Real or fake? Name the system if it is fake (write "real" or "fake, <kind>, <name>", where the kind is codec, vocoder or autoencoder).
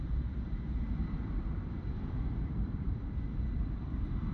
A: fake, vocoder, BigVGAN v2